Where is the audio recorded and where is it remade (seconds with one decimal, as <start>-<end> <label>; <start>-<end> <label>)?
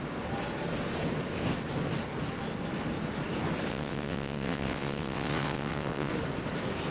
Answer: 0.0-3.7 recorded; 3.7-6.1 remade; 6.1-6.9 recorded